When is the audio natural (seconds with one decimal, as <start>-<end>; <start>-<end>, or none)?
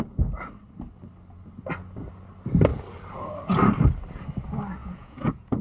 0.0-4.8